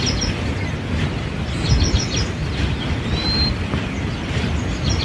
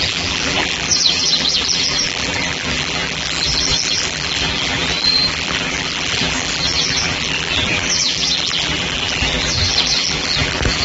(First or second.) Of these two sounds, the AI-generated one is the second